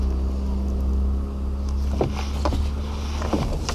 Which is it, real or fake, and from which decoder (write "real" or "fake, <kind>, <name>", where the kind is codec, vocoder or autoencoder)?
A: real